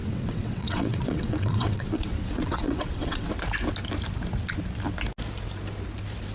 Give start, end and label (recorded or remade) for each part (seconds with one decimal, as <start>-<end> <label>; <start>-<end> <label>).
0.0-3.3 remade; 3.3-6.3 recorded